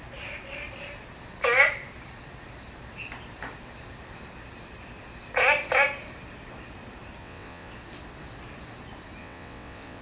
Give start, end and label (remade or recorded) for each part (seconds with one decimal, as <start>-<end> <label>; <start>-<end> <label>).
0.0-7.2 recorded; 7.2-7.7 remade; 7.7-9.2 recorded; 9.2-10.0 remade